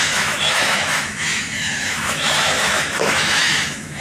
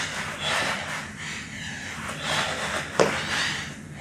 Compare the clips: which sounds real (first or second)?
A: second